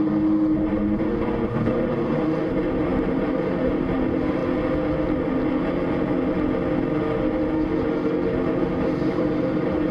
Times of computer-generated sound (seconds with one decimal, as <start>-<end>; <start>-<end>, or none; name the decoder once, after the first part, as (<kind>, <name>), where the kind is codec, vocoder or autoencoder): 0.0-4.4 (vocoder, BigVGAN v2); 8.6-9.9